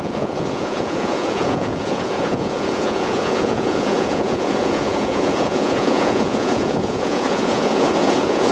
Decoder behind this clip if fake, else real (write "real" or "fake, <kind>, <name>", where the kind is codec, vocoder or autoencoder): fake, vocoder, Vocos